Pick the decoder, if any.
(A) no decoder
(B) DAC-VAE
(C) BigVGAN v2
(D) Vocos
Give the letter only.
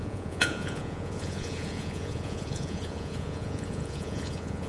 D